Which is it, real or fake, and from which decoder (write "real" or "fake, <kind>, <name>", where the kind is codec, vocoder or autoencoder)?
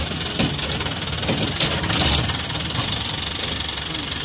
real